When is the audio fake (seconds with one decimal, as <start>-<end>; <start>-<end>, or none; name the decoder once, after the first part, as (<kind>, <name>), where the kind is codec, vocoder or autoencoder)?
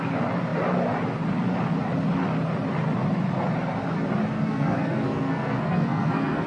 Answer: 4.3-6.5 (codec, SNAC)